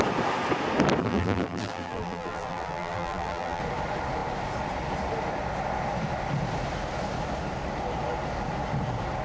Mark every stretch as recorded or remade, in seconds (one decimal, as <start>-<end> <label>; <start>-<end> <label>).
0.0-1.0 recorded; 1.0-3.6 remade; 3.6-9.2 recorded